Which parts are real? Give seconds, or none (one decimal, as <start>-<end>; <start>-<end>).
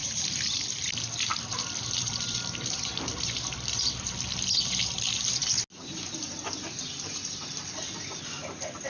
5.4-6.9